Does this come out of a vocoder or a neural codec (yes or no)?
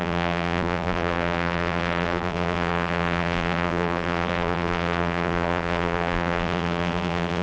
yes